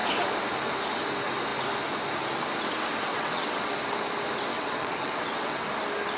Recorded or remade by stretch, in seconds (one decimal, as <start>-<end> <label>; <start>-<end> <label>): 0.0-3.1 recorded; 3.1-3.7 remade; 3.7-4.5 recorded; 4.5-5.7 remade; 5.7-6.2 recorded